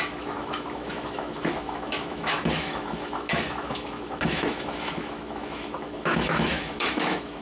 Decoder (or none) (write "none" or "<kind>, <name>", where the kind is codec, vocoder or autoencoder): autoencoder, DAC-VAE